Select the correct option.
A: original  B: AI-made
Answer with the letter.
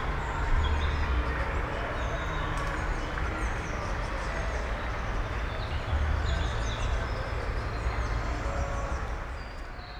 A